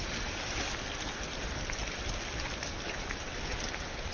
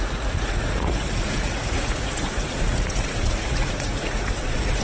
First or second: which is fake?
second